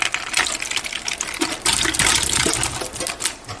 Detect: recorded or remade recorded